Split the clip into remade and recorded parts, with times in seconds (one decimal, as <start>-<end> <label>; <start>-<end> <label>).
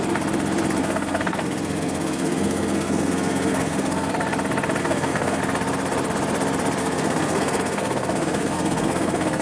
0.0-0.8 recorded; 0.8-4.1 remade; 4.1-4.8 recorded; 4.8-5.4 remade; 5.4-6.8 recorded; 6.8-9.4 remade